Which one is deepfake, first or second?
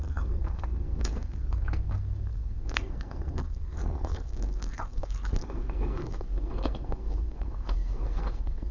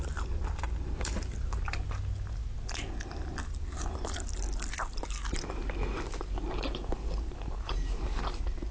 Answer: first